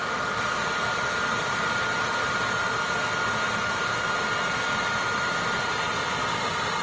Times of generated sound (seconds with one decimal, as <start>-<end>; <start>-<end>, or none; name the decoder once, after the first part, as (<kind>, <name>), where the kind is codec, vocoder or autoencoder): 0.0-2.6 (vocoder, BigVGAN v2)